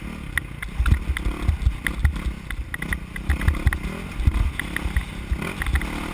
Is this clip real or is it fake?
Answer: real